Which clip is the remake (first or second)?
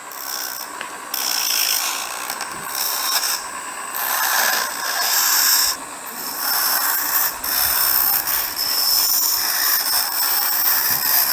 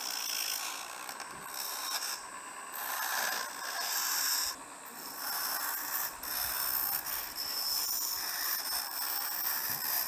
first